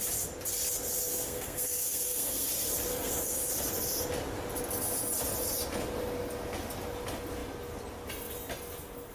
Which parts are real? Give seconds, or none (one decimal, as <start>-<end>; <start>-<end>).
0.0-1.1; 2.5-2.9; 3.5-9.1

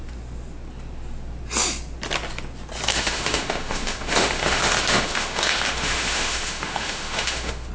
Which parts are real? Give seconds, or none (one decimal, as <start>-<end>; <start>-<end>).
0.0-2.9

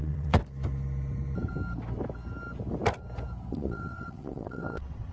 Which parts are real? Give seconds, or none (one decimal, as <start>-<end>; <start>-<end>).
0.4-3.5

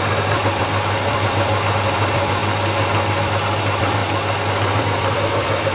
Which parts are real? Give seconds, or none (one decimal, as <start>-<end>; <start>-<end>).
2.4-3.6; 4.0-4.8

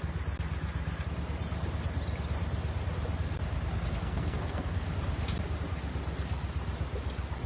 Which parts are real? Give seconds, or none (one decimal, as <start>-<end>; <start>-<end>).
0.0-4.0; 4.9-7.5

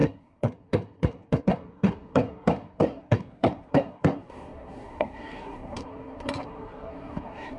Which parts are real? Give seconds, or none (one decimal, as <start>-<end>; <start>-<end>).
none

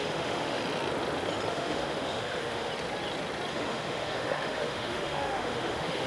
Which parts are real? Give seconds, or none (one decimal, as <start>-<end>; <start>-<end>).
0.6-1.5; 2.7-3.5